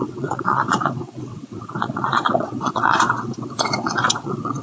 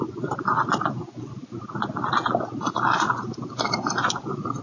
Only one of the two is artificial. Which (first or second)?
first